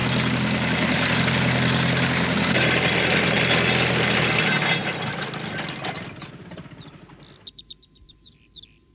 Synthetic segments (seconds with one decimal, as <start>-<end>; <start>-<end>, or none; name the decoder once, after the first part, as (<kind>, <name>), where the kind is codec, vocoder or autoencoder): none